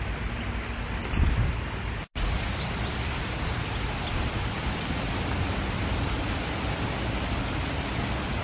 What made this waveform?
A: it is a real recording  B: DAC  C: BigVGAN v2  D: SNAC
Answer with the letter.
A